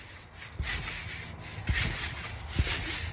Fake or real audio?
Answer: real